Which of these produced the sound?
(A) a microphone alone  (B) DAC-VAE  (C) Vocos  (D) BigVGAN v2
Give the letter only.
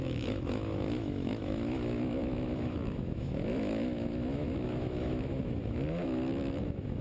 B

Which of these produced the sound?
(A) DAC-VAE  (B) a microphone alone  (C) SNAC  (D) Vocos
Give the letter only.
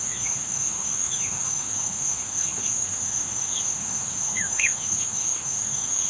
A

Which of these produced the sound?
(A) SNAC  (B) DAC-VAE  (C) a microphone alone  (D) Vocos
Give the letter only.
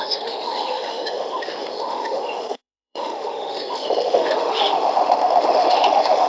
B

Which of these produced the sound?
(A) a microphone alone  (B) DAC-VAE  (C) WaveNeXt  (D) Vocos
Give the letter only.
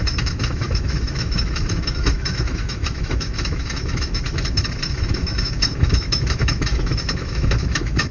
B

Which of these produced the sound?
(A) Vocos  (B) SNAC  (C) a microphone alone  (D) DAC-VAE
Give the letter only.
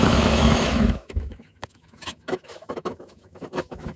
D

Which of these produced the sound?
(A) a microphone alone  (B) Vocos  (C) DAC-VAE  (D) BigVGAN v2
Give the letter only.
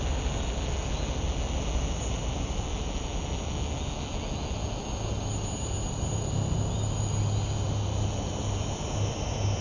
A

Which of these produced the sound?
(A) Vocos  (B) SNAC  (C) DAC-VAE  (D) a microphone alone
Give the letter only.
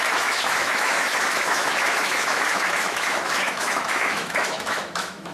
C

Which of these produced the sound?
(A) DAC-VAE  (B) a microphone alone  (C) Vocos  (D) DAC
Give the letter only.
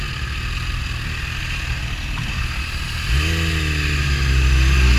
B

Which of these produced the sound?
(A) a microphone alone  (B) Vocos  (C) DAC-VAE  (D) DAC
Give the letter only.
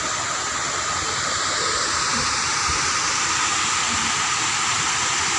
A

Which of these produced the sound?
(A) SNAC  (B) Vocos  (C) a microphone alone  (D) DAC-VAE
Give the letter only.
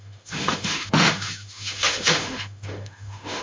D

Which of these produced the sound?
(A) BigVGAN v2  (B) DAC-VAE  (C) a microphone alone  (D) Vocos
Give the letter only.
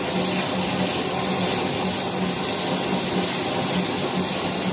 C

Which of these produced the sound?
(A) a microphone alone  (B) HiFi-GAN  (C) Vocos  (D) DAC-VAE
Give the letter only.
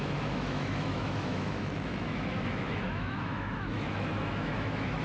D